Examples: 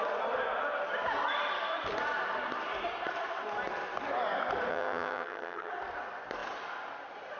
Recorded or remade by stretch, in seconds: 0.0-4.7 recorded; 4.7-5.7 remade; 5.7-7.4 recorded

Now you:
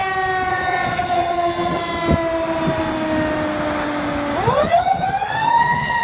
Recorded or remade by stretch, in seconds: 0.0-0.5 recorded; 0.5-1.8 remade; 1.8-4.5 recorded; 4.5-6.0 remade